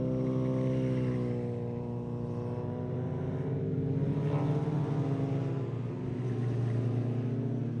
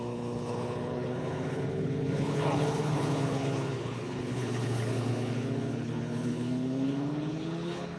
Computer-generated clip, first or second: second